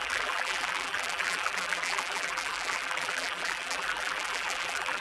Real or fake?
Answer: fake